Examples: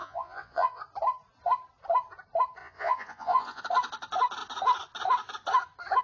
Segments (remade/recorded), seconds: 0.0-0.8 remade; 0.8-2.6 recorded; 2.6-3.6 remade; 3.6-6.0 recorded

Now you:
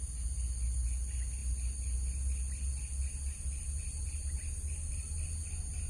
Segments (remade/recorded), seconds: 0.0-5.9 recorded

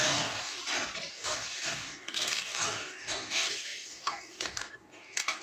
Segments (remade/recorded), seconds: 0.0-0.6 remade; 0.6-1.1 recorded; 1.1-5.4 remade

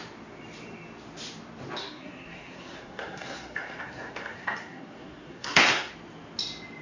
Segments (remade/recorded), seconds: 0.0-1.8 recorded; 1.8-5.9 remade; 5.9-6.8 recorded

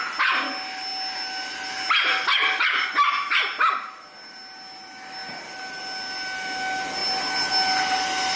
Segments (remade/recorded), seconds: 0.0-8.4 recorded

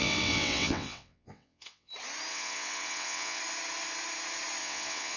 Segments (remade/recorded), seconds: 0.0-1.9 remade; 1.9-2.3 recorded; 2.3-3.4 remade; 3.4-4.6 recorded; 4.6-5.2 remade

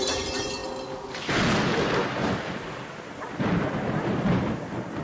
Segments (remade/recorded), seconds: 0.0-5.0 recorded